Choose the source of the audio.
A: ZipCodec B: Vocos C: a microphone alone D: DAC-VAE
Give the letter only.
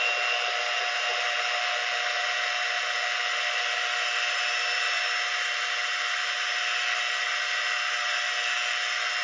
C